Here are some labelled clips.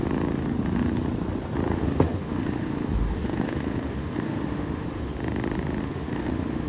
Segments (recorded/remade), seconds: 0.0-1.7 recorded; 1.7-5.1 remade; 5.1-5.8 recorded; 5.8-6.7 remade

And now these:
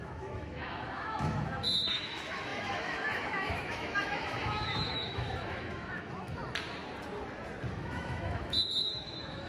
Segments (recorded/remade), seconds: 0.0-6.4 remade; 6.4-7.7 recorded; 7.7-9.5 remade